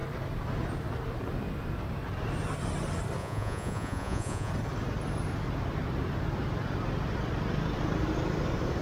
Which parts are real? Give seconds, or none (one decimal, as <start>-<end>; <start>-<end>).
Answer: 0.0-3.2; 4.5-8.8